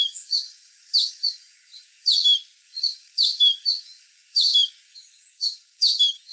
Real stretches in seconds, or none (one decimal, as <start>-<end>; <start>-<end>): 2.1-2.6